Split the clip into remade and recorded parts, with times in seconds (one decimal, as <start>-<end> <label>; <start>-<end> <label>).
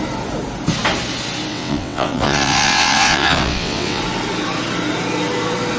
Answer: 0.0-1.5 recorded; 1.5-4.0 remade; 4.0-5.8 recorded